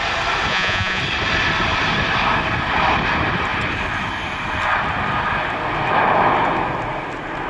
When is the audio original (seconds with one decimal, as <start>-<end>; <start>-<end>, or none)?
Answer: 0.0-0.5; 1.0-7.5